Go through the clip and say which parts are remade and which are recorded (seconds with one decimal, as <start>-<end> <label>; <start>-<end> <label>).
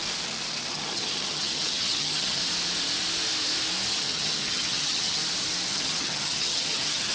0.0-0.7 recorded; 0.7-2.4 remade; 2.4-3.9 recorded; 3.9-5.2 remade; 5.2-5.7 recorded; 5.7-7.1 remade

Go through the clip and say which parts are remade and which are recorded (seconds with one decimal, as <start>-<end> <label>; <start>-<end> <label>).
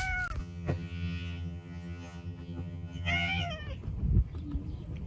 0.0-0.4 recorded; 0.4-3.5 remade; 3.5-5.1 recorded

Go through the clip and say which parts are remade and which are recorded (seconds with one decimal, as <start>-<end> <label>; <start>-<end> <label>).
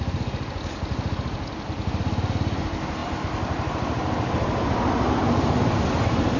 0.0-6.4 recorded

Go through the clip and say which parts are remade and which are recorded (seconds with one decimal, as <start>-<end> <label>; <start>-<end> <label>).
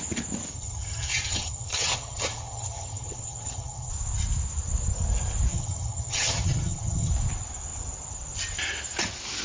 0.0-0.5 recorded; 0.5-3.9 remade; 3.9-5.5 recorded; 5.5-7.1 remade; 7.1-9.4 recorded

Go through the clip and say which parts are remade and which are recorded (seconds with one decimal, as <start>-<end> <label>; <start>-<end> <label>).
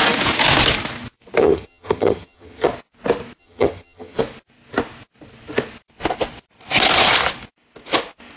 0.0-1.4 recorded; 1.4-2.7 remade; 2.7-3.4 recorded; 3.4-4.2 remade; 4.2-8.4 recorded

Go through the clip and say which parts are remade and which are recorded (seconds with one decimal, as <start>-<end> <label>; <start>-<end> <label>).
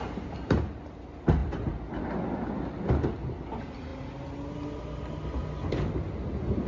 0.0-6.7 recorded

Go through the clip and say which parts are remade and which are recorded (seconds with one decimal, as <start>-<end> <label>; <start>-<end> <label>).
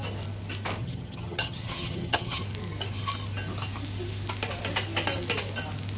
0.0-0.8 recorded; 0.8-2.4 remade; 2.4-6.0 recorded